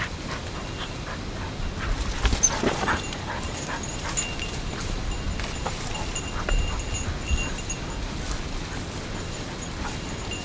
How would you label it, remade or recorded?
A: recorded